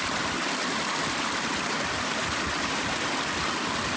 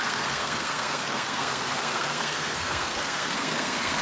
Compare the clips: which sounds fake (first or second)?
second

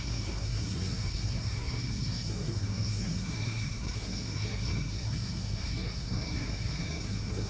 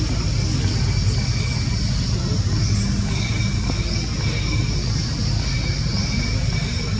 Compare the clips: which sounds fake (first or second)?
first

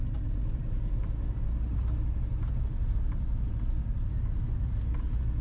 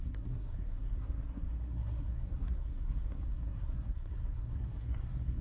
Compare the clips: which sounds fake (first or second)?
second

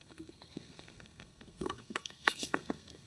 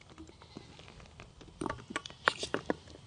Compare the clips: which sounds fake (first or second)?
first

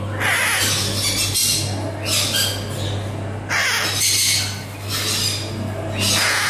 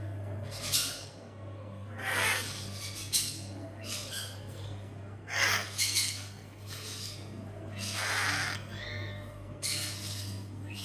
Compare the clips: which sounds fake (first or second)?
second